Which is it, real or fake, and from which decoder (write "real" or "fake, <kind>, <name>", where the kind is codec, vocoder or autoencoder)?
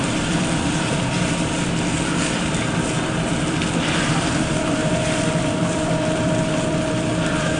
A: fake, vocoder, BigVGAN v2